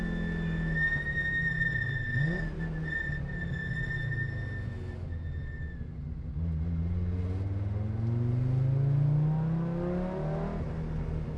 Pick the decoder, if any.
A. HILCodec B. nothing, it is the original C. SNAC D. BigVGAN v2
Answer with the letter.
B